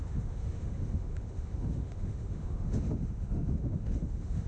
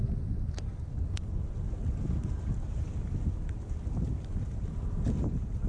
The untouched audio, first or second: second